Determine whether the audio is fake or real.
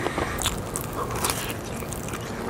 real